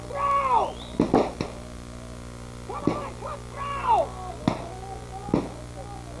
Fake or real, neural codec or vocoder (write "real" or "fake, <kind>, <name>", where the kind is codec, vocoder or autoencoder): real